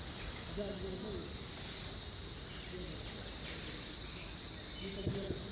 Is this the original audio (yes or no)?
yes